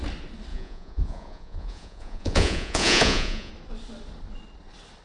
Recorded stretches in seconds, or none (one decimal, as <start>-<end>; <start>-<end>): 0.0-0.5; 3.5-5.0